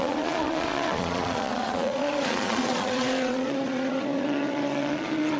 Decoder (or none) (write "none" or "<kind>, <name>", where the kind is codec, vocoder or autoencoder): vocoder, Vocos